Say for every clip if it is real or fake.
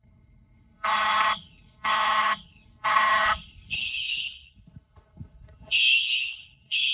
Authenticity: fake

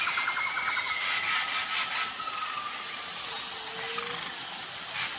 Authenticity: real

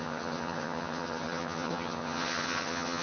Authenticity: fake